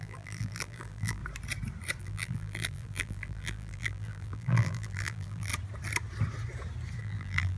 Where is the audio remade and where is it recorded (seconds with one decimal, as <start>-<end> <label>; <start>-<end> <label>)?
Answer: 0.0-1.2 remade; 1.2-2.0 recorded; 2.0-5.5 remade; 5.5-7.0 recorded; 7.0-7.6 remade